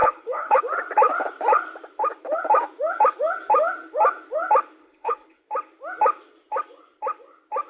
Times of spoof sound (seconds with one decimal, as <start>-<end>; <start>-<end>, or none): 0.0-0.6; 4.8-5.4